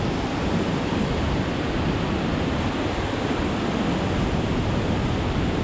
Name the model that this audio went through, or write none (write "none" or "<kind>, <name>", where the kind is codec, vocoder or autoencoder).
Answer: none